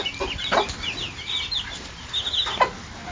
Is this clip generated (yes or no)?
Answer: no